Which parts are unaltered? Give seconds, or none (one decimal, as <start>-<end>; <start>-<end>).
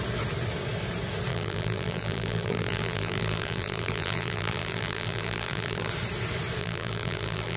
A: 0.0-1.3; 5.9-6.6